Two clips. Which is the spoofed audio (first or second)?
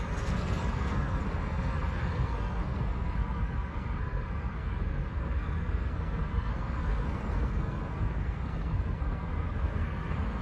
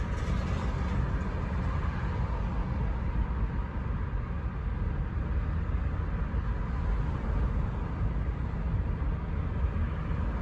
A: first